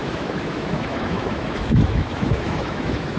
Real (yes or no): no